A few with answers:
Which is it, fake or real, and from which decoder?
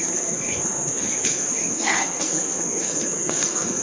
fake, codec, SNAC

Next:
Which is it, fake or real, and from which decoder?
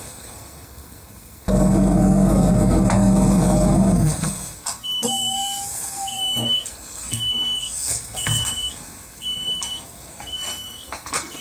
fake, codec, SNAC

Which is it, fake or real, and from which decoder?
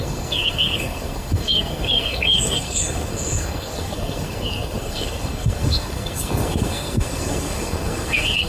fake, codec, SNAC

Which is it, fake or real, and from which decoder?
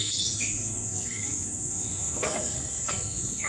fake, codec, SNAC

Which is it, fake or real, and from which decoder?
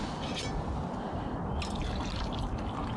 real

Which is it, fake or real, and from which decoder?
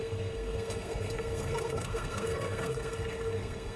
fake, codec, SNAC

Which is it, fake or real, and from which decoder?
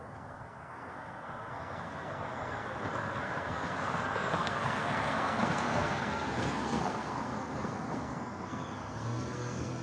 fake, codec, SNAC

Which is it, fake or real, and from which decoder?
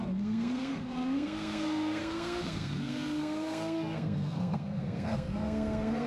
fake, codec, SNAC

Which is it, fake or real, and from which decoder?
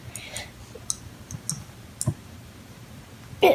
real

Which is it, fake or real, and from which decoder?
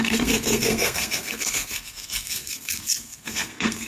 fake, codec, SNAC